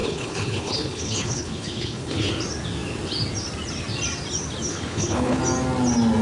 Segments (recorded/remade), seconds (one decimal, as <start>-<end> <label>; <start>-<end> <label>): 0.0-2.3 remade; 2.3-4.7 recorded; 4.7-5.4 remade; 5.4-6.2 recorded